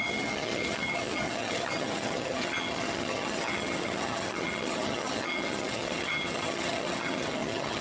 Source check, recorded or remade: remade